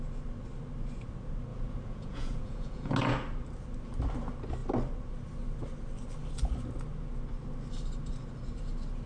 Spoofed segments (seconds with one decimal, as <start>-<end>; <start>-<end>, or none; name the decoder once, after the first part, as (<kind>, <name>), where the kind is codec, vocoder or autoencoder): 1.5-2.9 (vocoder, Vocos)